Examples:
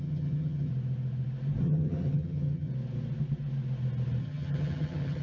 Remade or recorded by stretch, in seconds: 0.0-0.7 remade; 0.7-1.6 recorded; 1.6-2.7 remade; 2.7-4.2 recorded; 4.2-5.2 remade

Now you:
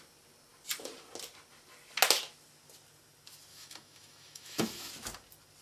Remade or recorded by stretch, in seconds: 0.0-3.5 recorded; 3.5-4.9 remade; 4.9-5.6 recorded

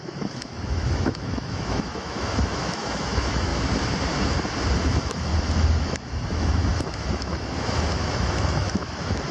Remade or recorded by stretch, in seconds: 0.0-3.5 remade; 3.5-4.8 recorded; 4.8-5.3 remade; 5.3-5.8 recorded; 5.8-9.3 remade

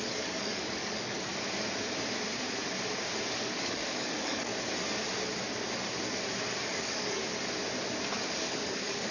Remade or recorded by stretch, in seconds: 0.0-1.3 remade; 1.3-3.4 recorded; 3.4-4.5 remade; 4.5-6.6 recorded; 6.6-7.2 remade; 7.2-8.1 recorded; 8.1-9.1 remade

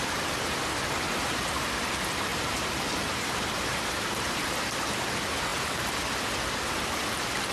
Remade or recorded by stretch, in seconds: 0.0-2.3 recorded; 2.3-4.5 remade; 4.5-7.5 recorded

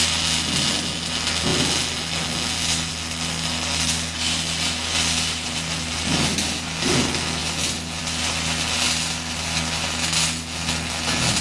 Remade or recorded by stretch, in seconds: 0.0-11.4 recorded